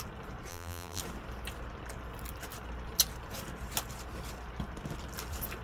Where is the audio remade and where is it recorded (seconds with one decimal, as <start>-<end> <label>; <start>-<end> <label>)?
0.0-0.5 recorded; 0.5-1.0 remade; 1.0-5.6 recorded